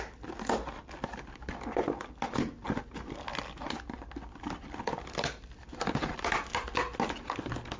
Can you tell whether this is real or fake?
real